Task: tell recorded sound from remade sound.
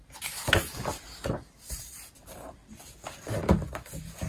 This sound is recorded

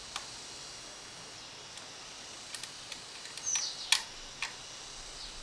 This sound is recorded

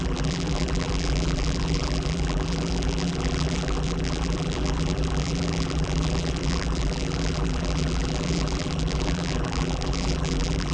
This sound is remade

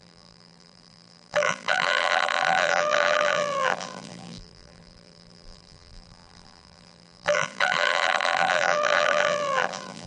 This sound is remade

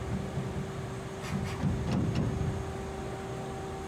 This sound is recorded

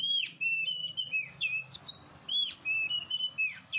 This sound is recorded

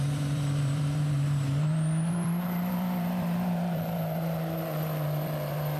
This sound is remade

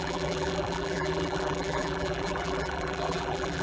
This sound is remade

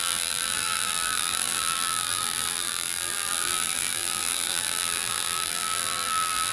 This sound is remade